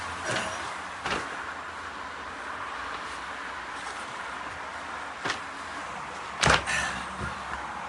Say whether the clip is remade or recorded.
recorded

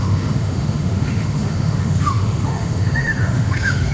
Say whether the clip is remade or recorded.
remade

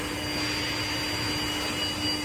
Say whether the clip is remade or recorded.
recorded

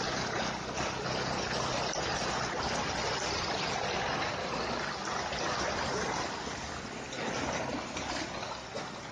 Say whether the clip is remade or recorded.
recorded